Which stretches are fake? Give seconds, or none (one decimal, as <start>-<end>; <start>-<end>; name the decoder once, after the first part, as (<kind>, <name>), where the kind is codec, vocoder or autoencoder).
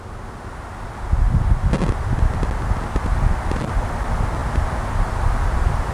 3.1-3.7 (vocoder, BigVGAN v2)